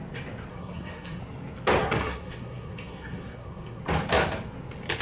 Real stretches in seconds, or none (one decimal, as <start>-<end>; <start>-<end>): 0.0-0.5; 1.2-1.8; 3.8-5.0

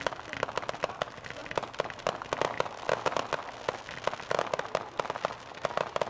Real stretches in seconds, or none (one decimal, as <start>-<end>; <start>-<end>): 0.0-6.1

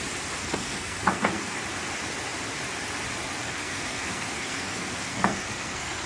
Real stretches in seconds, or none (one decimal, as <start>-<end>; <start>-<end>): 0.0-0.4; 1.6-3.4